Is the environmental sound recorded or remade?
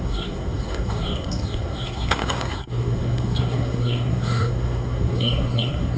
remade